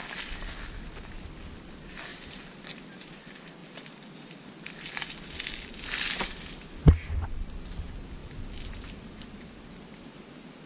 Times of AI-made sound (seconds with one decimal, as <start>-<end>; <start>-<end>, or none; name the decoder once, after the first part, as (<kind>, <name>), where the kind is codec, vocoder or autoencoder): 2.1-3.2 (vocoder, BigVGAN v2); 8.2-8.9